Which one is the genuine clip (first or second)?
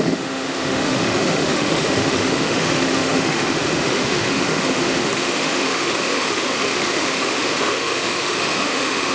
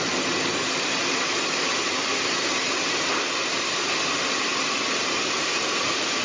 second